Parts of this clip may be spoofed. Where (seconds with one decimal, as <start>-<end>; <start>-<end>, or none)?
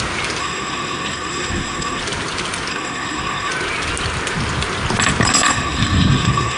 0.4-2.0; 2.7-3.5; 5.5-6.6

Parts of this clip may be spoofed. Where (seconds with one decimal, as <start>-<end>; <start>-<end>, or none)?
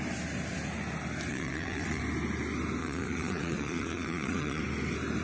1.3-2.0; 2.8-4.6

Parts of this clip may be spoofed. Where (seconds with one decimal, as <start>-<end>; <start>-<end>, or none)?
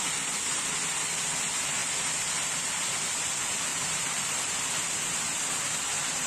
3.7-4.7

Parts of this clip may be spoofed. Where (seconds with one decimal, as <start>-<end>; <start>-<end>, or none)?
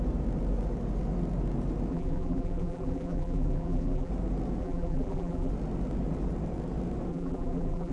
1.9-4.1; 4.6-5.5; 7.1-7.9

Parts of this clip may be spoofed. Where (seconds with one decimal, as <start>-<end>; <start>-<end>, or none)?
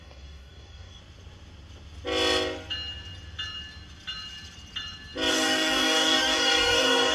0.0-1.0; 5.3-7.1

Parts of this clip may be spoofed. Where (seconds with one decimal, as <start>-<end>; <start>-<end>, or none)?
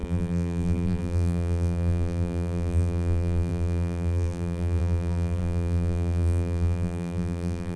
0.0-7.8